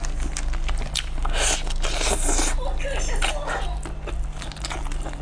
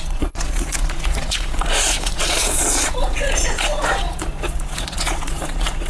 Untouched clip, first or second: first